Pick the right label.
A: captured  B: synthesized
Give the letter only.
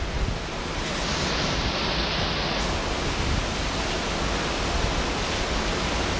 A